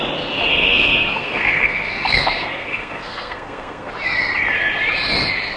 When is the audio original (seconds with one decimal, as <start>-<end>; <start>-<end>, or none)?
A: 0.0-0.5; 3.9-5.6